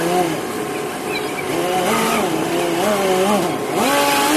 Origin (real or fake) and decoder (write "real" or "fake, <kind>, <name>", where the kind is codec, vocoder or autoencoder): real